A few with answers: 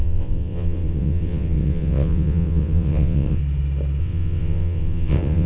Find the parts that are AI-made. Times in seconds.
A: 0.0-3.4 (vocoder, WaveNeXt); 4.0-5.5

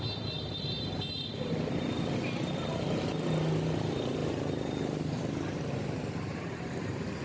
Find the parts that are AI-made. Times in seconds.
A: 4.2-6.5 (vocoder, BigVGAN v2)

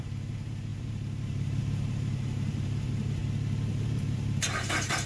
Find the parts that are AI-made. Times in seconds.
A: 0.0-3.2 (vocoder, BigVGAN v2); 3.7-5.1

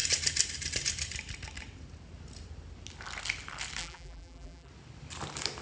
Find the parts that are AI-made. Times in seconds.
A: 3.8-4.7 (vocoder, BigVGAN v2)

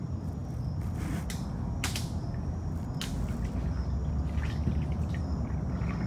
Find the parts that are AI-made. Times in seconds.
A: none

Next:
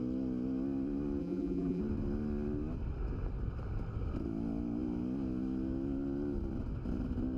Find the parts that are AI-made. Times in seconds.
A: 1.2-1.8 (vocoder, BigVGAN v2)

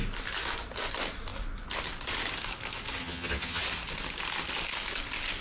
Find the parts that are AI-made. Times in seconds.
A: 3.0-3.6 (vocoder, HiFi-GAN)

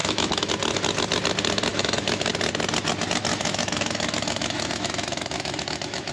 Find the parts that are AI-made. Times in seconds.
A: 0.0-0.5 (autoencoder, DAC-VAE); 1.7-2.3; 3.3-6.1